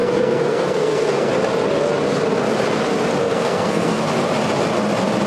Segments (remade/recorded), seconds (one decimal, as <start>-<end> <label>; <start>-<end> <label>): 0.0-1.3 remade; 1.3-3.2 recorded; 3.2-4.0 remade; 4.0-5.3 recorded